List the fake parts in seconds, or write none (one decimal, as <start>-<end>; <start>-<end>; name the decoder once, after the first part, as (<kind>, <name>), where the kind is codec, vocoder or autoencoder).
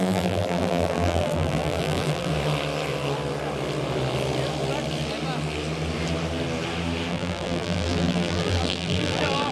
0.0-2.3 (vocoder, BigVGAN v2); 7.1-9.5